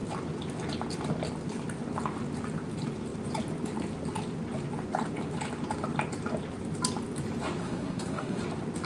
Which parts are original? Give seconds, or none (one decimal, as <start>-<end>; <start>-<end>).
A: 0.0-7.6; 8.4-8.8